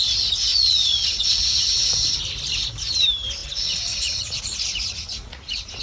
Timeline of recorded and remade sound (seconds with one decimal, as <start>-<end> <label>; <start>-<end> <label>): 0.0-0.5 recorded; 0.5-1.6 remade; 1.6-3.4 recorded; 3.4-5.8 remade